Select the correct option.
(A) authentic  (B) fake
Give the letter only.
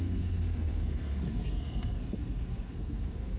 B